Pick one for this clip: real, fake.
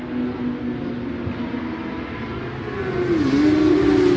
real